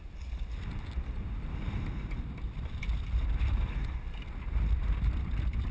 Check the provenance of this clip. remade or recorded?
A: recorded